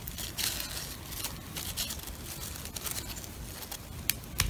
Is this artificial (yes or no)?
no